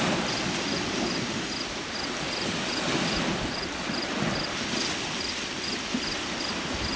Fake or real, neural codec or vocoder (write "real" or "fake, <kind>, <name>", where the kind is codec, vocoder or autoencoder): real